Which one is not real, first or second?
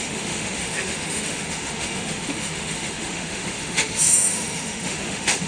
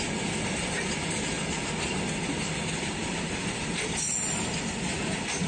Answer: first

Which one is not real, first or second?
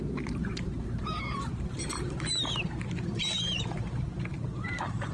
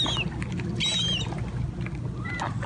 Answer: first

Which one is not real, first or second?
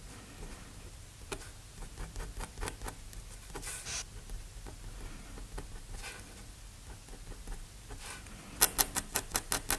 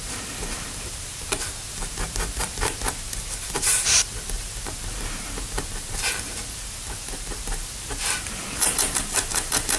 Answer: second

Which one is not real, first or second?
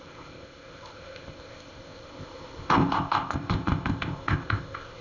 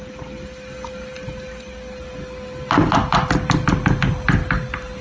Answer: first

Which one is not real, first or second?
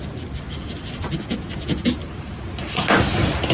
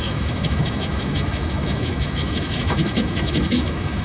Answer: second